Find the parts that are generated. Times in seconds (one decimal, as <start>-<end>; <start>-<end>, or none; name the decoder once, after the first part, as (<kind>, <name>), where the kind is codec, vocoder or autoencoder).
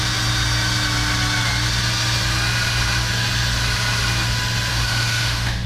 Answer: 4.7-5.7 (autoencoder, DAC-VAE)